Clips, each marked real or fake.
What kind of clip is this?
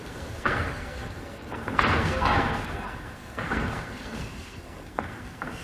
fake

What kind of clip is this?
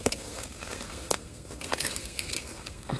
fake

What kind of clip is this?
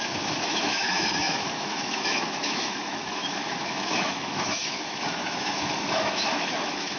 fake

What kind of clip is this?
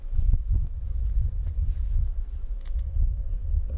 real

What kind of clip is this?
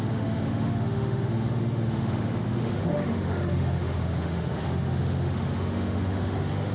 fake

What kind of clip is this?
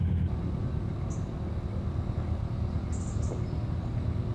real